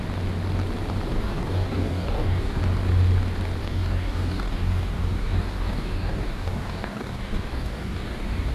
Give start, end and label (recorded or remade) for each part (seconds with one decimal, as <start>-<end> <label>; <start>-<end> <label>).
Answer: 0.0-1.1 recorded; 1.1-2.6 remade; 2.6-3.6 recorded; 3.6-8.5 remade